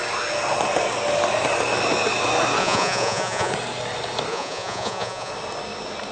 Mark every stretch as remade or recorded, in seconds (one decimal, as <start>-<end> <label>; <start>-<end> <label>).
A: 0.0-2.6 recorded; 2.6-3.5 remade; 3.5-4.3 recorded; 4.3-5.3 remade; 5.3-6.1 recorded